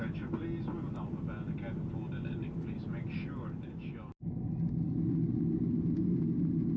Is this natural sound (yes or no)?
yes